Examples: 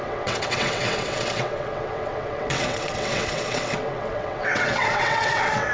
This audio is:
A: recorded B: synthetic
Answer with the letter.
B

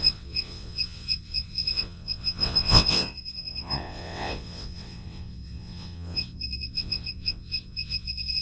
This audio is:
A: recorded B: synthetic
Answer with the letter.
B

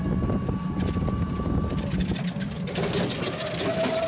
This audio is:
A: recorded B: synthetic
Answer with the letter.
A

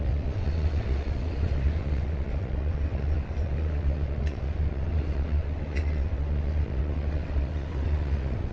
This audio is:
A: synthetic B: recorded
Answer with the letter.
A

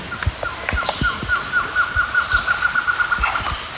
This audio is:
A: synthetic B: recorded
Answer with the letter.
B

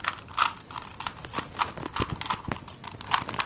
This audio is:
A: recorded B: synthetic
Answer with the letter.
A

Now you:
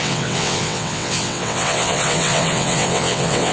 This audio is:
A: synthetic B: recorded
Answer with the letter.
A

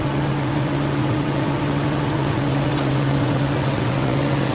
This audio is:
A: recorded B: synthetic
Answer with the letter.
B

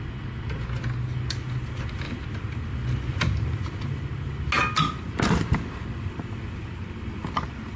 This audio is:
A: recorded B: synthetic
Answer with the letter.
A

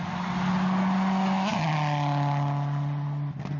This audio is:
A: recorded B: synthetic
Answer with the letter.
A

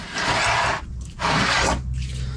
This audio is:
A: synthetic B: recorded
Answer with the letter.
B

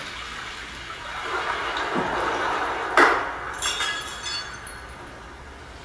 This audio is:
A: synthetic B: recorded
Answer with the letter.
B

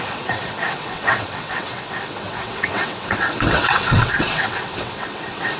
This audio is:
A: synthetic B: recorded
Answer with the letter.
A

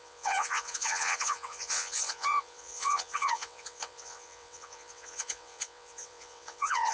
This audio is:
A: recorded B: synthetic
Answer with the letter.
B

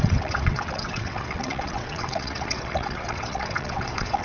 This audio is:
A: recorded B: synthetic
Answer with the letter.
B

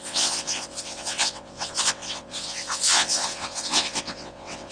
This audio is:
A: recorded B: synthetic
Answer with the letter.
B